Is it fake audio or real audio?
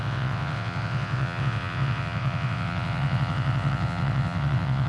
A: fake